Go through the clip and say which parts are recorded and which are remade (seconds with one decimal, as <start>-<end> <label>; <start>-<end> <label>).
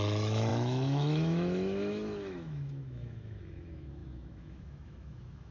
0.0-5.5 remade